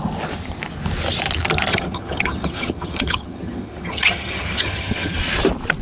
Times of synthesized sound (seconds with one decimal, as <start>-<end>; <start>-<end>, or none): 1.7-5.2